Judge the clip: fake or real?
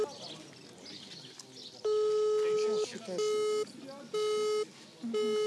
real